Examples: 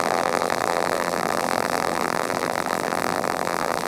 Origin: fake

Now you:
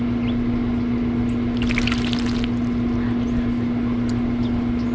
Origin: real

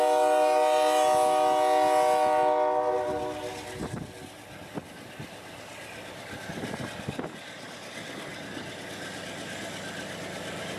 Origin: real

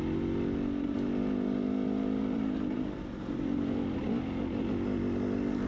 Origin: real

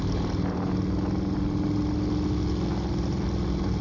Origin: real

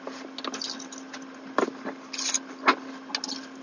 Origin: real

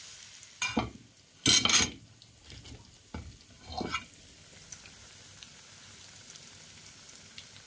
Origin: real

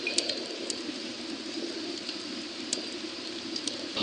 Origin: fake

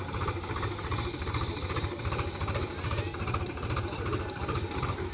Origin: fake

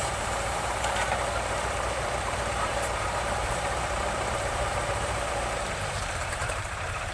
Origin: fake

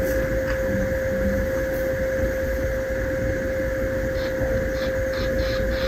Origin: real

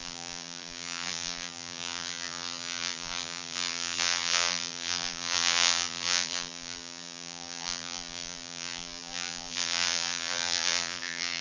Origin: fake